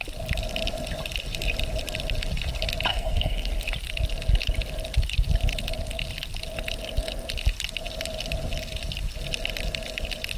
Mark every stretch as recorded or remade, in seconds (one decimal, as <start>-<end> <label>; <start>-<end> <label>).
0.0-2.9 recorded; 2.9-3.5 remade; 3.5-10.4 recorded